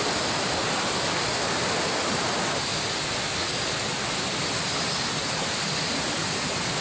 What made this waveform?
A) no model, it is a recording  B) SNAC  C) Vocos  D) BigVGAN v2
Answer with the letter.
A